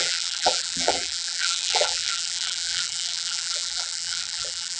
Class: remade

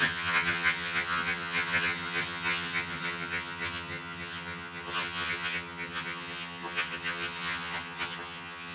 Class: remade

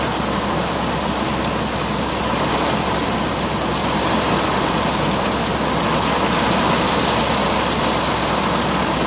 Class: recorded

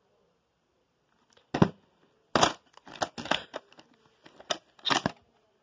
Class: recorded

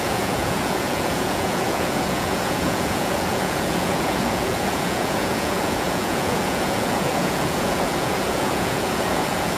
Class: remade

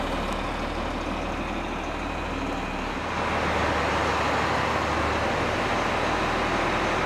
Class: recorded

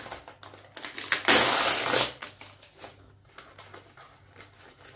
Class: recorded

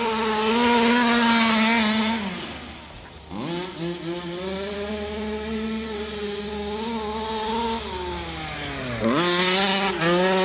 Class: recorded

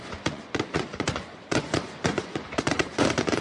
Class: remade